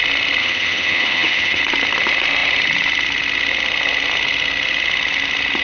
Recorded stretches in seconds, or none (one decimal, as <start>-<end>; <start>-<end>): 0.0-0.4; 1.6-5.6